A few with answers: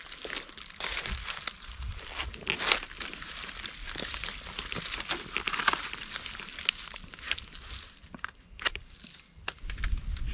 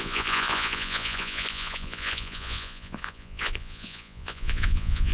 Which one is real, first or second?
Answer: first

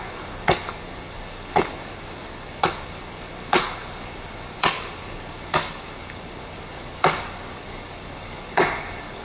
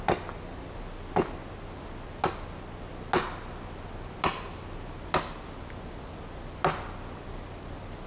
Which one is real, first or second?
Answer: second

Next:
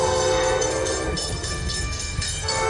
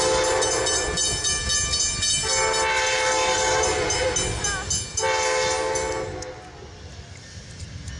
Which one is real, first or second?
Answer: second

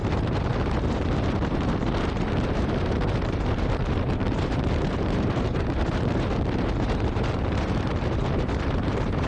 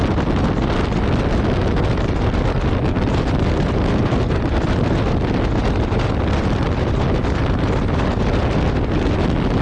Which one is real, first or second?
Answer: second